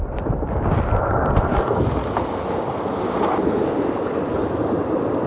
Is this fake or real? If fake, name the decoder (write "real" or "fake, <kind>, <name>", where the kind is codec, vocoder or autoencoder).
real